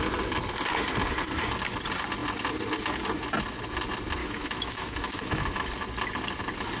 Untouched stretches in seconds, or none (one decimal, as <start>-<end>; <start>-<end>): 0.0-4.2; 5.7-6.8